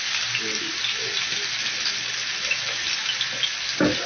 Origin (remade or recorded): recorded